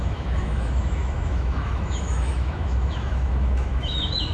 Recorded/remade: remade